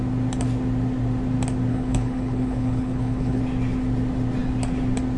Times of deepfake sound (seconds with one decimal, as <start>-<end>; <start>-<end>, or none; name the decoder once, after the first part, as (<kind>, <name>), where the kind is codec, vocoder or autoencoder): 1.7-3.4 (codec, HILCodec)